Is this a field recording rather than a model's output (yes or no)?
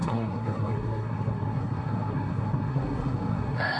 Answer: no